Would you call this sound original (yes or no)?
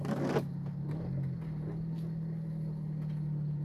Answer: yes